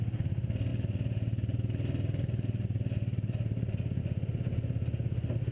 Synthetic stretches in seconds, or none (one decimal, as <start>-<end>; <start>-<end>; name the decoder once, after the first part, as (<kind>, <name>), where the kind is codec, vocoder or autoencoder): 0.7-4.0 (vocoder, BigVGAN v2)